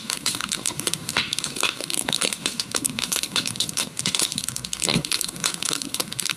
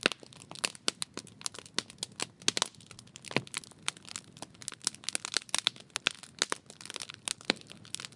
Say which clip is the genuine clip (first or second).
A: second